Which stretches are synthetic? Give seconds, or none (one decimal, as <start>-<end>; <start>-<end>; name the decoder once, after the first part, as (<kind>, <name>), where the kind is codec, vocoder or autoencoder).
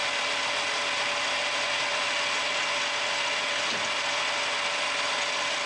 none